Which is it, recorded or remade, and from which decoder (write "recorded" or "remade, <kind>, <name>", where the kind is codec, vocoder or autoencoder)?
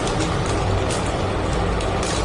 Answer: recorded